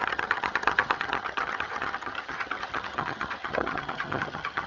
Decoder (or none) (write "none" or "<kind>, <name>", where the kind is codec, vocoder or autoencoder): vocoder, HiFi-GAN